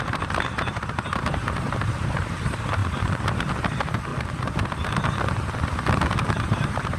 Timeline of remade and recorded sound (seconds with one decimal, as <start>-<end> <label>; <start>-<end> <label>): 0.0-2.8 remade; 2.8-3.5 recorded; 3.5-4.1 remade; 4.1-6.4 recorded; 6.4-7.0 remade